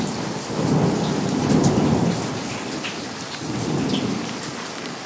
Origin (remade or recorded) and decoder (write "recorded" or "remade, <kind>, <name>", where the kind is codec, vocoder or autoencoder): recorded